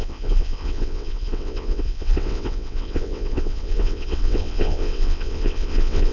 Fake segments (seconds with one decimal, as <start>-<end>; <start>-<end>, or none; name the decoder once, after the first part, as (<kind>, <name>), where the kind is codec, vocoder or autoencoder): 0.0-6.1 (vocoder, WaveNeXt)